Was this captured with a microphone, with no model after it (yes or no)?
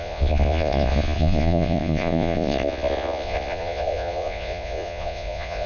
no